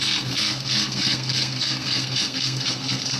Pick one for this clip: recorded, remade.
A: remade